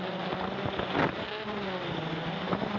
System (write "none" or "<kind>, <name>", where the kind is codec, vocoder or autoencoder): none